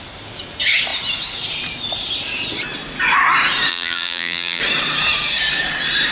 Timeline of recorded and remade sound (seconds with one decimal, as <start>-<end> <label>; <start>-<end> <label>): 0.0-3.7 recorded; 3.7-4.6 remade; 4.6-6.1 recorded